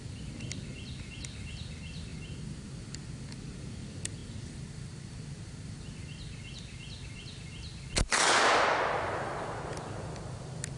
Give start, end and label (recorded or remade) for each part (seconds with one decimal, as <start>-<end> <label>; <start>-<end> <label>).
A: 0.0-10.8 recorded